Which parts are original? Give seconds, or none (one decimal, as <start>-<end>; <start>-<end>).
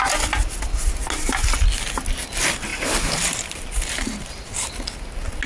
0.0-2.7; 4.5-5.5